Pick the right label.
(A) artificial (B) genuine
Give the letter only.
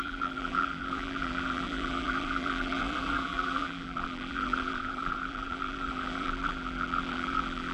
A